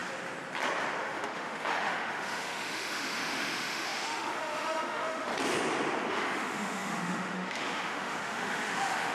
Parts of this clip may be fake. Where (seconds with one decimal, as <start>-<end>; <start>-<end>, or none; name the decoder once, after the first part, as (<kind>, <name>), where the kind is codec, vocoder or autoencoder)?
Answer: 1.0-5.3 (autoencoder, DAC-VAE); 6.1-9.1